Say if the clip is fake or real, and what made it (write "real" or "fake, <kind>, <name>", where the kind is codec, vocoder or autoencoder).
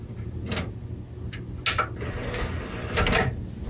real